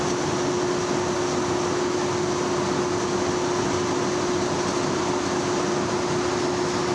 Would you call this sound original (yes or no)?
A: yes